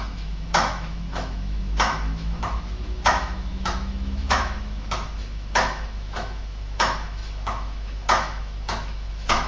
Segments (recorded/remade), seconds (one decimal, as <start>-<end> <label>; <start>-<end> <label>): 0.0-9.5 remade